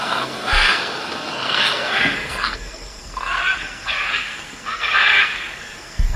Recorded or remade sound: remade